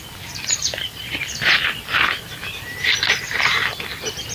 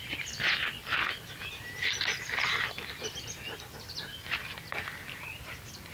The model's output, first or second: first